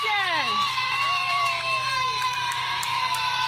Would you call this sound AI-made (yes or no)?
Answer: yes